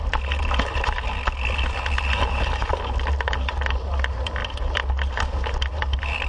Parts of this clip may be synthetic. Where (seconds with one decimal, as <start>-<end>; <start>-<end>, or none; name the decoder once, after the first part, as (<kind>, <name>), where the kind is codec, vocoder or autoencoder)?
none